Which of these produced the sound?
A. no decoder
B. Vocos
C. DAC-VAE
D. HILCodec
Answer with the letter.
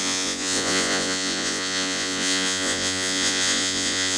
B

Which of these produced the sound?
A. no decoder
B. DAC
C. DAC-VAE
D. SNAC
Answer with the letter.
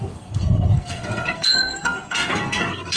D